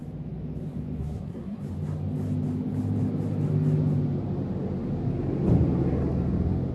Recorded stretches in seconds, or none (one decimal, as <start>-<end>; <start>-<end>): 0.0-1.0; 1.6-6.7